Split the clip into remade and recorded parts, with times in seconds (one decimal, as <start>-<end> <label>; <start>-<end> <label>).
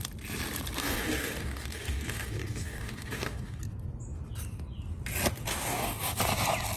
0.0-0.8 recorded; 0.8-3.6 remade; 3.6-5.5 recorded; 5.5-6.2 remade; 6.2-6.8 recorded